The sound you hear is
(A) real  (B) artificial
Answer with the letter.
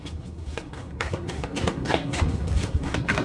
B